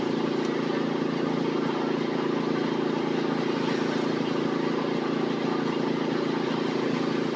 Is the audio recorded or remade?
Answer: recorded